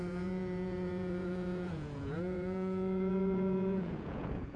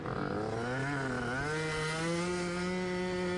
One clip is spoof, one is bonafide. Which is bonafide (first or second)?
second